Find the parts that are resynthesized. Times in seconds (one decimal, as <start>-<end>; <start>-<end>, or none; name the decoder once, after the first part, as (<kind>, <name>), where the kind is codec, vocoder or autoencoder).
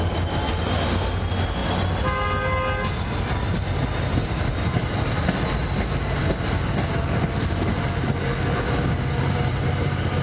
none